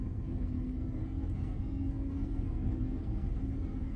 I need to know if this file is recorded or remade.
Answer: remade